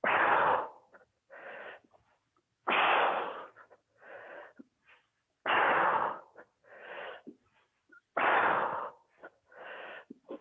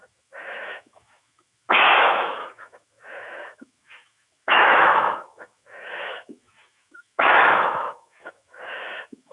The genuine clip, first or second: first